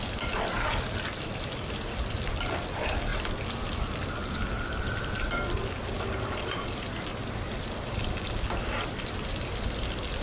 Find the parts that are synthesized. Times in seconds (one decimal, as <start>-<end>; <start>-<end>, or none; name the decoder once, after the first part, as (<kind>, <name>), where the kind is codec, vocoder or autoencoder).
none